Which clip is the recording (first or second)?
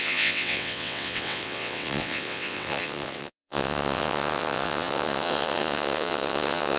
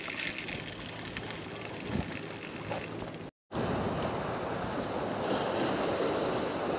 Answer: second